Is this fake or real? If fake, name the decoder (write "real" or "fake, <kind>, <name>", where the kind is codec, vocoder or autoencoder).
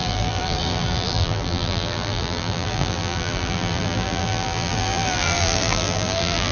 fake, vocoder, BigVGAN v2